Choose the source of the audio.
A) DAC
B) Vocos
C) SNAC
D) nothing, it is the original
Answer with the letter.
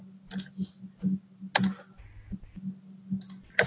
D